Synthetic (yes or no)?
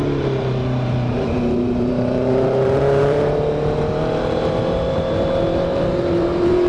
yes